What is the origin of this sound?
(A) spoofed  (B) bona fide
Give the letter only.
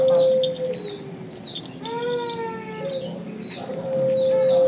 B